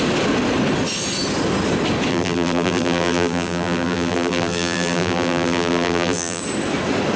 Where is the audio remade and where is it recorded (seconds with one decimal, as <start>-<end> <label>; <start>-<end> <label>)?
0.0-2.1 recorded; 2.1-6.4 remade; 6.4-7.2 recorded